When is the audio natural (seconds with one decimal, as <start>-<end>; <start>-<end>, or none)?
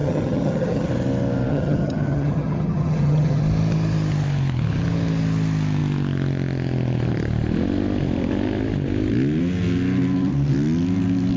0.9-1.5; 3.4-11.4